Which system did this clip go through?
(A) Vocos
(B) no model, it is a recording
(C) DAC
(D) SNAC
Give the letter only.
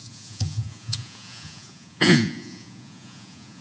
A